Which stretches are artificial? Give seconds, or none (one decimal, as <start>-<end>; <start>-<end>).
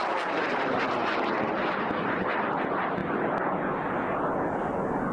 none